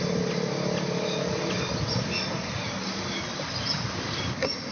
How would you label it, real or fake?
real